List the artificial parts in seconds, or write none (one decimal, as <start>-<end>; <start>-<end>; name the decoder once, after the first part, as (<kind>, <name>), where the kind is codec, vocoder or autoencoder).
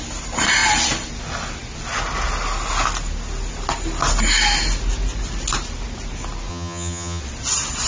6.5-7.2 (vocoder, HiFi-GAN)